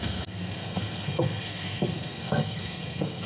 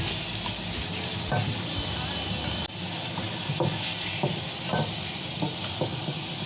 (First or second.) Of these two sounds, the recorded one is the second